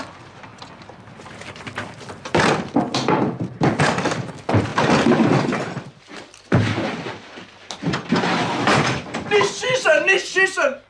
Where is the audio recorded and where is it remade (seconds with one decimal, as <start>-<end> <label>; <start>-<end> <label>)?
0.0-10.9 remade

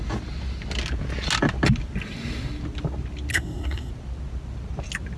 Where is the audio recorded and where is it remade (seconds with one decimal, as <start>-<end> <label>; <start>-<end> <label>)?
0.0-3.3 recorded; 3.3-3.9 remade; 3.9-5.2 recorded

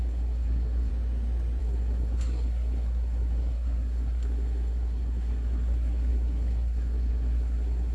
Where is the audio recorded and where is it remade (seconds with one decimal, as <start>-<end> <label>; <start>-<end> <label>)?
0.0-0.9 remade; 0.9-1.6 recorded; 1.6-7.9 remade

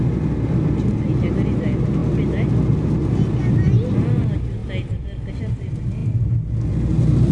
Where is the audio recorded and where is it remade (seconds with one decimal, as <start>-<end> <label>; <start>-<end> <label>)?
0.0-7.3 recorded

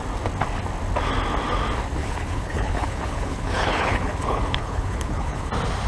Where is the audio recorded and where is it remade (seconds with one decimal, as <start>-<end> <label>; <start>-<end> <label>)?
0.0-2.0 recorded; 2.0-5.5 remade; 5.5-5.9 recorded